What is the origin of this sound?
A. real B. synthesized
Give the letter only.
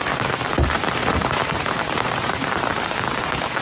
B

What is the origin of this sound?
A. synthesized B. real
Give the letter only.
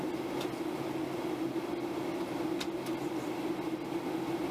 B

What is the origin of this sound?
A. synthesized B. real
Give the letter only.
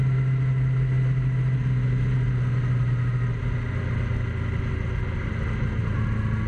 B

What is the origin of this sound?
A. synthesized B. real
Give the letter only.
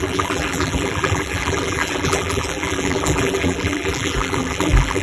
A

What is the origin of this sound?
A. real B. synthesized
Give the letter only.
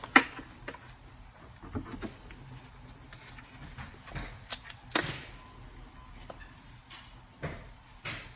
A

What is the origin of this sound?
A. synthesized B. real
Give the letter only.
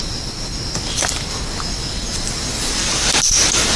B